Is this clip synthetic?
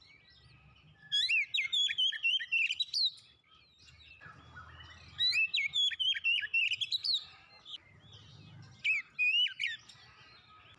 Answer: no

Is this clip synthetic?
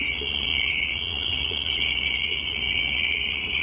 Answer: yes